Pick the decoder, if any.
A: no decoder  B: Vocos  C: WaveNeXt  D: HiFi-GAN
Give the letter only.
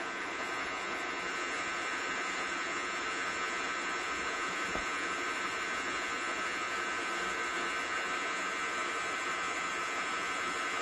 B